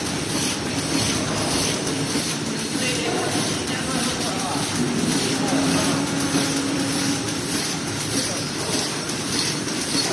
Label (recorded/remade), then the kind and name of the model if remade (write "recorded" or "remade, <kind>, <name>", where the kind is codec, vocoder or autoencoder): remade, vocoder, BigVGAN v2